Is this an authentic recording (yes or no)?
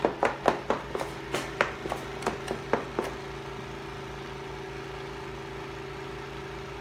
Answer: yes